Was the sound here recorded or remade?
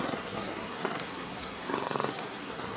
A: remade